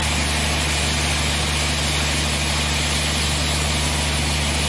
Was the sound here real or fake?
real